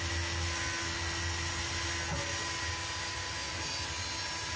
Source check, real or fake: real